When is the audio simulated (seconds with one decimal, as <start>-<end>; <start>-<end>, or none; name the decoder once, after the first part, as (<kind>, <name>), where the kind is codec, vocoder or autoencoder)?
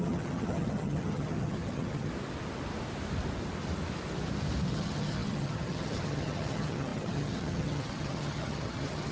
0.0-2.1 (vocoder, HiFi-GAN); 4.7-9.1